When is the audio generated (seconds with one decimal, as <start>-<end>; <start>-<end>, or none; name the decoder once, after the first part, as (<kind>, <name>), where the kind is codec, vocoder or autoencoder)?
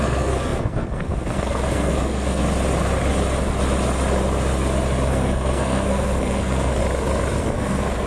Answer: 0.0-2.4 (codec, SNAC); 5.1-6.8; 7.4-8.1